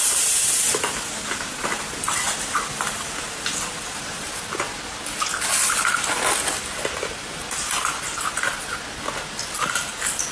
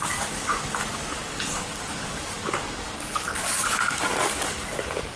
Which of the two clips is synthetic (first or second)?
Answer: second